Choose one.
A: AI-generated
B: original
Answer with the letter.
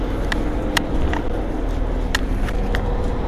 B